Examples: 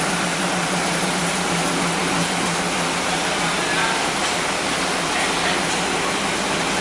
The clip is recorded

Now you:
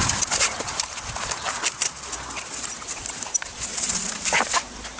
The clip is recorded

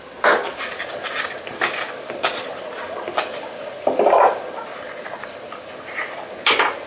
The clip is recorded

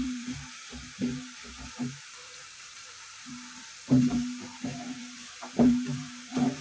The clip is remade